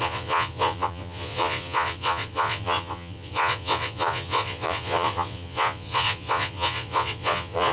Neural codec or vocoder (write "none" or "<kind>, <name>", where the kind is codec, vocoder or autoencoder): vocoder, Vocos